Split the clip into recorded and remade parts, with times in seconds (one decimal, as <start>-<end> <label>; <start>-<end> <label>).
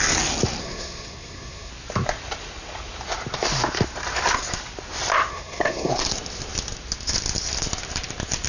0.0-0.6 recorded; 0.6-1.7 remade; 1.7-5.3 recorded; 5.3-5.9 remade; 5.9-8.5 recorded